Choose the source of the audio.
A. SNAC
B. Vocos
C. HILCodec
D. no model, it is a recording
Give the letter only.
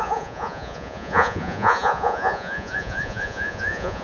B